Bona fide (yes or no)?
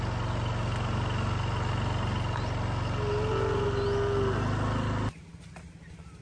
yes